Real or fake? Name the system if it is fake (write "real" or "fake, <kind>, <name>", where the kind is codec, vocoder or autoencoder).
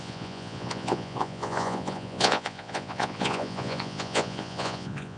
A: fake, vocoder, Vocos